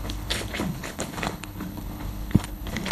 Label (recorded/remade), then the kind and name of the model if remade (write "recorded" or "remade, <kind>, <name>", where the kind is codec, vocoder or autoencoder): remade, codec, HILCodec